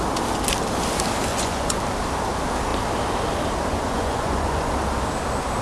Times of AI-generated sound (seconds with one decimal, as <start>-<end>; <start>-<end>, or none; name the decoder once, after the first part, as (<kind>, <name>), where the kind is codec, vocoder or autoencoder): 1.3-1.8 (vocoder, Vocos); 3.7-4.7